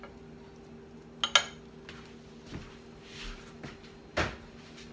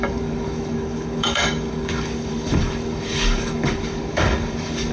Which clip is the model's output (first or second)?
second